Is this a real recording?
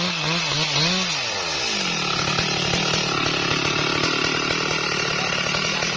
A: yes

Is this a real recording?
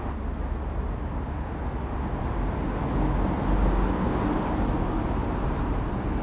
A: yes